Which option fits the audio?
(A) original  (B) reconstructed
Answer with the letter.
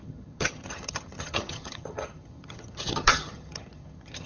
B